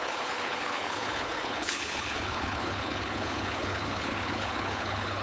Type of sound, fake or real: fake